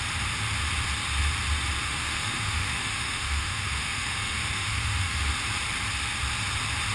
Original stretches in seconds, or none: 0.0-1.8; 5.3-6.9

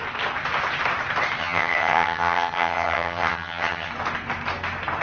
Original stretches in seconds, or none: 0.0-1.4; 3.9-5.0